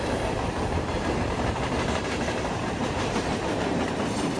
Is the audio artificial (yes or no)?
yes